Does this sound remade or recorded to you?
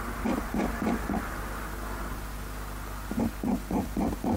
recorded